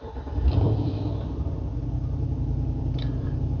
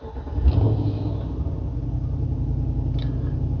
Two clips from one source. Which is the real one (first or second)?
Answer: second